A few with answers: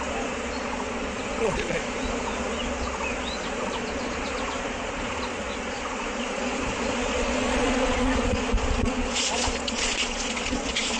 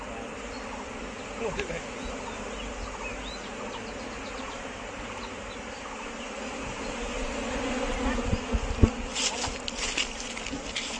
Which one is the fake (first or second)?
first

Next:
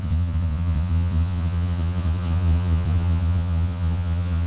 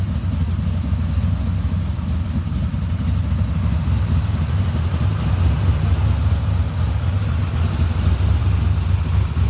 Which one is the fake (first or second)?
first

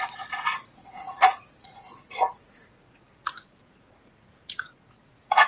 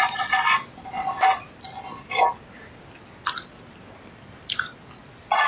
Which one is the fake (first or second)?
first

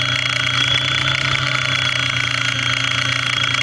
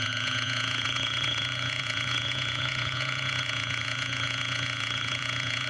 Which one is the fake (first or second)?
second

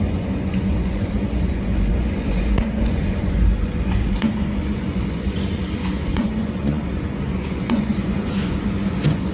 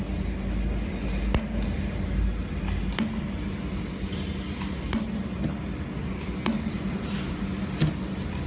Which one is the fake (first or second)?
first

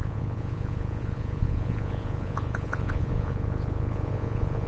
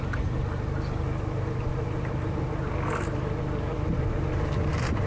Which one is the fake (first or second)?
first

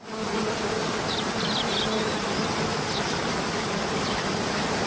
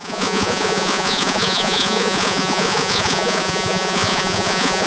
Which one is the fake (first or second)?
second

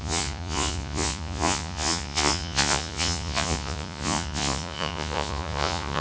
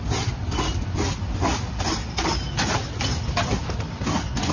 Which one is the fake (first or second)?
first